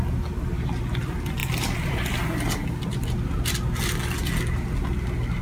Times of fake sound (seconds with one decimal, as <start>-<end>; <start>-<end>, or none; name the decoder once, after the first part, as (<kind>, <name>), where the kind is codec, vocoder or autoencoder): none